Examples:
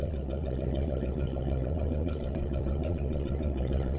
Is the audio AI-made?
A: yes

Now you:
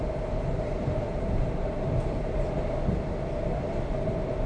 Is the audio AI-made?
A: no